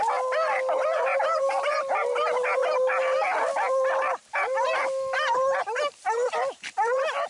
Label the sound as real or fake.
real